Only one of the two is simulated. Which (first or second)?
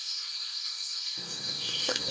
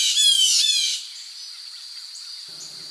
first